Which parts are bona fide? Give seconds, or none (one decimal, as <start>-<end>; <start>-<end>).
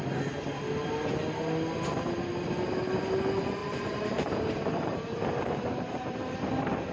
0.0-3.6